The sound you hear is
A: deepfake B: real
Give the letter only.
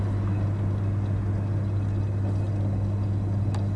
B